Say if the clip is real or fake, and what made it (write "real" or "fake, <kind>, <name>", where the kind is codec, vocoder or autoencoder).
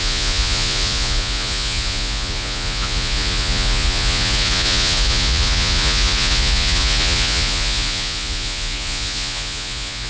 fake, vocoder, Vocos